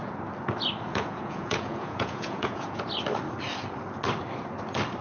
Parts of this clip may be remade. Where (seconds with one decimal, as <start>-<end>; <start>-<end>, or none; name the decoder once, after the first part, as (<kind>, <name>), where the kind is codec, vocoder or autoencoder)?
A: 0.9-2.8 (vocoder, Vocos)